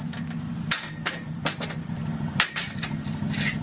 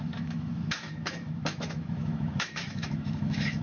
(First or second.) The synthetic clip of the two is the second